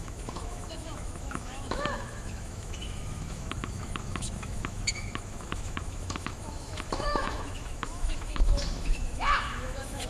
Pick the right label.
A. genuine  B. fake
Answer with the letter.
B